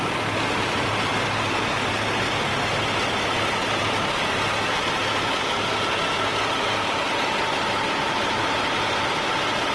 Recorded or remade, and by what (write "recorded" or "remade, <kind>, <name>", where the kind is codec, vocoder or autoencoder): recorded